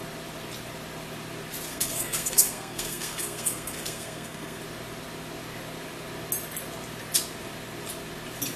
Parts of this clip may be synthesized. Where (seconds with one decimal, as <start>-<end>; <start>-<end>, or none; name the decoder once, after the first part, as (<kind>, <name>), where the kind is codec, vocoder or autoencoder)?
1.7-4.6 (codec, SNAC)